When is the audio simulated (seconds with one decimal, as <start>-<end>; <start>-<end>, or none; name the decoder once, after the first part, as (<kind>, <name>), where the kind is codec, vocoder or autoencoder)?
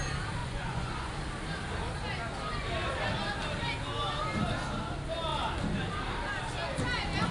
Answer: 0.4-1.1 (vocoder, Vocos)